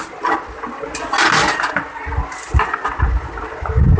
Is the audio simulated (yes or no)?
no